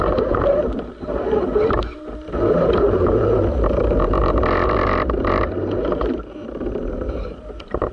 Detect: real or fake fake